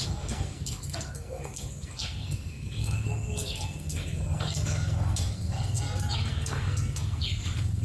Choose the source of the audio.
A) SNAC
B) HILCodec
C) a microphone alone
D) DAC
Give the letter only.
A